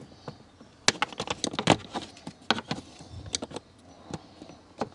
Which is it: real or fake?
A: real